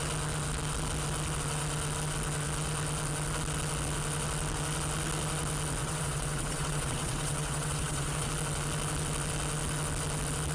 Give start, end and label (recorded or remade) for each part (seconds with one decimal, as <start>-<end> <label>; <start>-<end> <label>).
0.0-5.8 recorded; 5.8-8.3 remade; 8.3-10.5 recorded